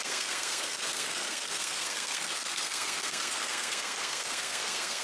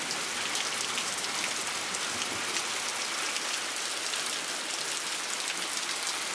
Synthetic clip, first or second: first